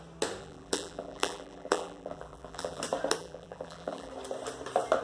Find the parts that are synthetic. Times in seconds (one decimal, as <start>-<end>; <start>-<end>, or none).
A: 0.4-2.8; 3.2-4.1